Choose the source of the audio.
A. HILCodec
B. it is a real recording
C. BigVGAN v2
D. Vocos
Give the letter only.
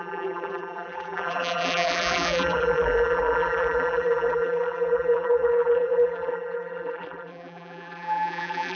C